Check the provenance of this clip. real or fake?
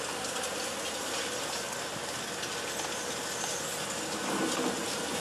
real